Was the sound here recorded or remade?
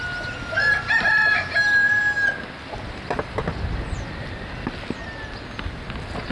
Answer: recorded